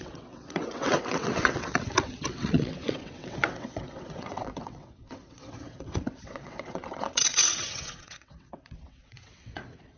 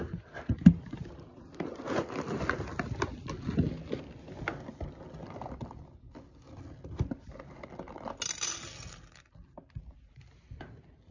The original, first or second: second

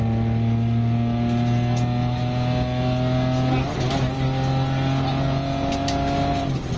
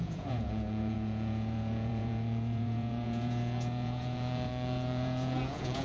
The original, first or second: first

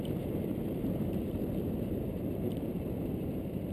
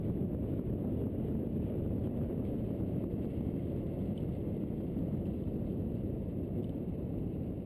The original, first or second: second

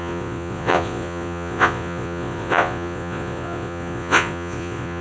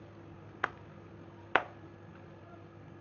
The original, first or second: second